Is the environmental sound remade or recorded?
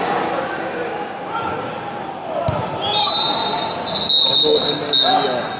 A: recorded